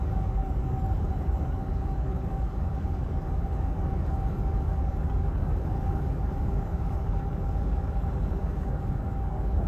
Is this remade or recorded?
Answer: remade